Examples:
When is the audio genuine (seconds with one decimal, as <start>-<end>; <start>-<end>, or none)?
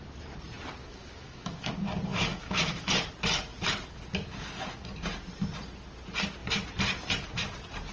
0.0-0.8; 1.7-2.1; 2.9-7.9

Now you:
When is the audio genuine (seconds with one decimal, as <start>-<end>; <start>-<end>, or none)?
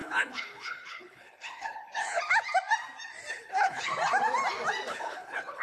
2.2-3.3; 3.9-4.9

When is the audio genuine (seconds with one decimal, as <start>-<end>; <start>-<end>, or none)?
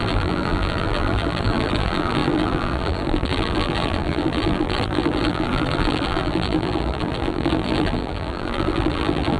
none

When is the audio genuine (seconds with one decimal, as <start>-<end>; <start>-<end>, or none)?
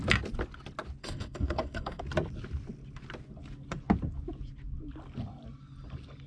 0.0-1.0; 2.0-6.3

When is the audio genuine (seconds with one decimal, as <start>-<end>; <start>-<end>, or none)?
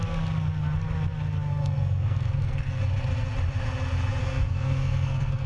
0.0-1.5; 2.8-4.2